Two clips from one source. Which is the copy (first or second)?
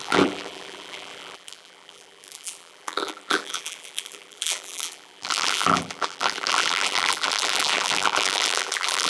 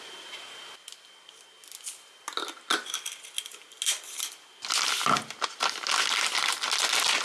first